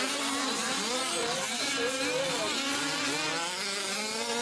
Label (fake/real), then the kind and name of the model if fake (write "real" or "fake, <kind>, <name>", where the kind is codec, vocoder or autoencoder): real